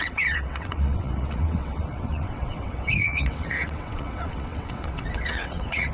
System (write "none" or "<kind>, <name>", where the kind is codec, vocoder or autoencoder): vocoder, WaveNeXt